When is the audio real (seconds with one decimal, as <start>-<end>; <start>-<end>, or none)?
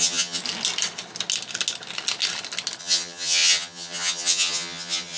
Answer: 0.4-2.8